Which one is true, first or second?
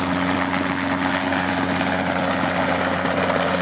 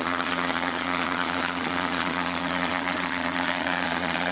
first